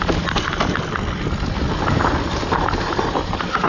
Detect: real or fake real